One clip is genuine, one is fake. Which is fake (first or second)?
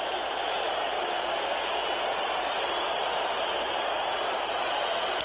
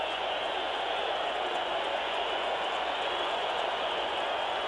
second